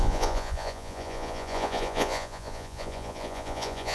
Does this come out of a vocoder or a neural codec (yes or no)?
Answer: yes